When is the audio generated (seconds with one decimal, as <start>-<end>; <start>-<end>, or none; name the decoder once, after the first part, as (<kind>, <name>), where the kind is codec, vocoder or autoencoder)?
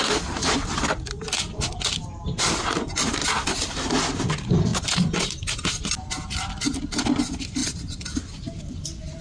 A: none